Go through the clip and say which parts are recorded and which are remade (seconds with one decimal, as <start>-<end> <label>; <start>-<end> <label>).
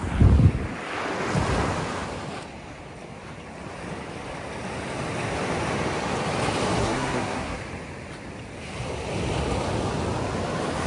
0.0-6.8 recorded; 6.8-7.6 remade; 7.6-10.9 recorded